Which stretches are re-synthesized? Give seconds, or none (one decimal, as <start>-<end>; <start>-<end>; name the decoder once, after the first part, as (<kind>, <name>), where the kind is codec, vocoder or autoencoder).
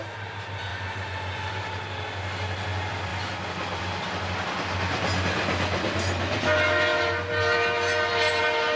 0.7-1.5 (vocoder, Vocos)